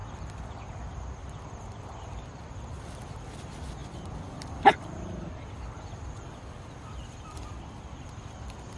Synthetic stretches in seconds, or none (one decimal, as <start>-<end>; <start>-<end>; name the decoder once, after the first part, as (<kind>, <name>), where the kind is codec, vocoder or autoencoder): none